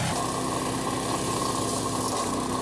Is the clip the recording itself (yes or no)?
yes